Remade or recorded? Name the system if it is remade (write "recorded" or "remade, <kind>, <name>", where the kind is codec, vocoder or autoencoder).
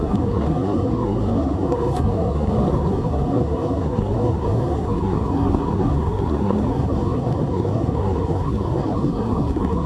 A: remade, codec, SNAC